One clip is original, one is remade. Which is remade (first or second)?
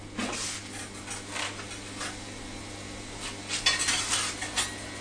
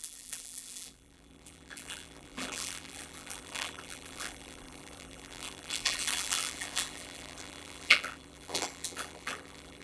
second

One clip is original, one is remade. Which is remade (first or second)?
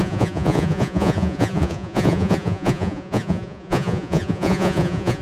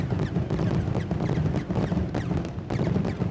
first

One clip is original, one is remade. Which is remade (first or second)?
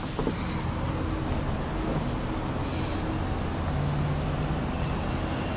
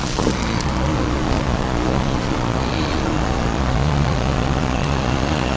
second